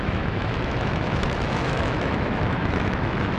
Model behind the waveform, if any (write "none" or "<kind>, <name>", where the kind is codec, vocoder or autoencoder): autoencoder, DAC-VAE